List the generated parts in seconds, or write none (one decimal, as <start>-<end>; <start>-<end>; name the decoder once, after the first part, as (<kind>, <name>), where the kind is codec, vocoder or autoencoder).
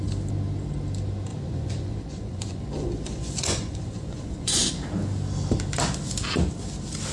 1.3-4.7 (vocoder, Vocos)